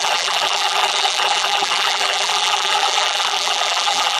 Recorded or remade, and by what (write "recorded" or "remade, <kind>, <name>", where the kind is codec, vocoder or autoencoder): remade, vocoder, BigVGAN v2